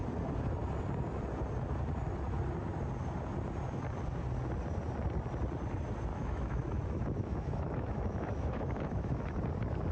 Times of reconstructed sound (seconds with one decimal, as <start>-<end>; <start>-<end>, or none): 6.1-9.4